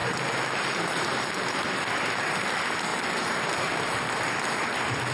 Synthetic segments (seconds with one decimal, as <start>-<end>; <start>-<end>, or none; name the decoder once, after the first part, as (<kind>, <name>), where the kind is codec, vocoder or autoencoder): 0.0-1.9 (vocoder, BigVGAN v2); 2.9-3.5